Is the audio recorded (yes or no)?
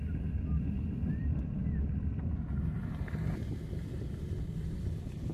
yes